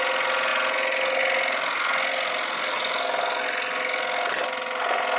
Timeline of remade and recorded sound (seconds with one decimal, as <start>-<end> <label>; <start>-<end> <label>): 0.0-5.2 recorded